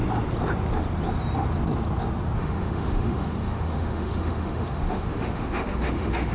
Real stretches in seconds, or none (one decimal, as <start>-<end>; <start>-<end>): 0.0-2.4